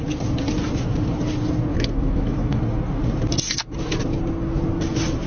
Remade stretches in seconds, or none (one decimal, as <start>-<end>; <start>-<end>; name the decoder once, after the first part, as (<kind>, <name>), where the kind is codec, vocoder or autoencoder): 1.7-2.6 (autoencoder, DAC-VAE)